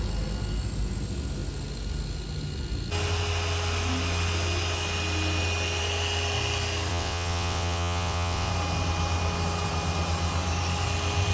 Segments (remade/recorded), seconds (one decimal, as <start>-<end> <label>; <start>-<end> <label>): 0.0-6.9 recorded; 6.9-8.5 remade; 8.5-11.3 recorded

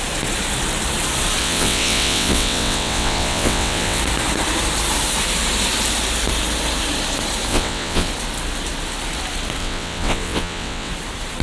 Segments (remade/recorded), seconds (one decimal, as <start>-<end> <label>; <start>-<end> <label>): 0.0-1.4 recorded; 1.4-4.0 remade; 4.0-7.5 recorded; 7.5-8.1 remade; 8.1-9.6 recorded; 9.6-10.9 remade; 10.9-11.4 recorded

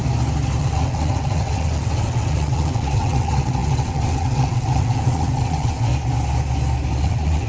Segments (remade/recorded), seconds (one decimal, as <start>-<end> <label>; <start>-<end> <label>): 0.0-0.6 recorded; 0.6-5.9 remade; 5.9-7.0 recorded; 7.0-7.5 remade

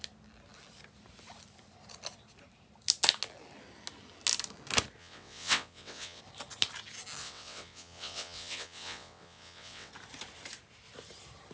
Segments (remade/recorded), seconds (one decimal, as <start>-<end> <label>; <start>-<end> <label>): 0.0-5.0 recorded; 5.0-6.2 remade; 6.2-7.2 recorded; 7.2-9.9 remade; 9.9-11.5 recorded

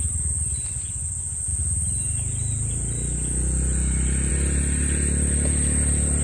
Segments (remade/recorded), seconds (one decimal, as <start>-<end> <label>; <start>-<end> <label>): 0.0-6.2 recorded